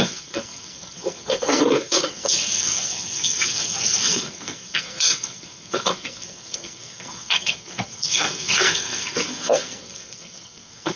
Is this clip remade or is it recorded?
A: remade